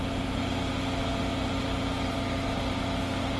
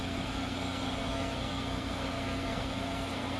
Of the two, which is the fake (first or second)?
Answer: second